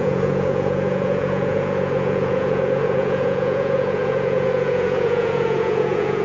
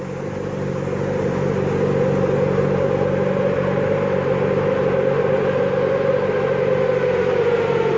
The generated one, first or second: first